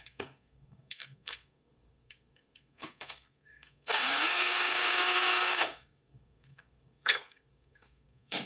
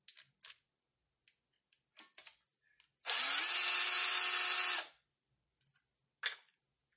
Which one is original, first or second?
second